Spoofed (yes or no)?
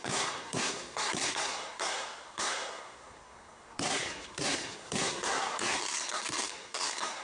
yes